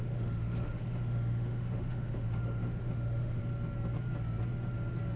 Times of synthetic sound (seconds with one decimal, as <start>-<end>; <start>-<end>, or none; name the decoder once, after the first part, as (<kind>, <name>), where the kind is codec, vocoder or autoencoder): 0.0-3.4 (autoencoder, DAC-VAE)